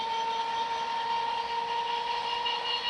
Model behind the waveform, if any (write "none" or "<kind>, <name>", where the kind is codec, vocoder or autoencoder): none